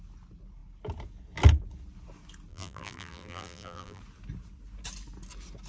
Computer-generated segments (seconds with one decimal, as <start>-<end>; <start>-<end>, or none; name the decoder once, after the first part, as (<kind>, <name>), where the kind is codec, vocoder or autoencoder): 2.5-4.0 (vocoder, BigVGAN v2)